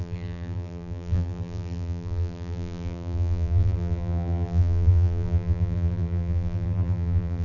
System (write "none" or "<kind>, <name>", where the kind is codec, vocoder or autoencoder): vocoder, BigVGAN v2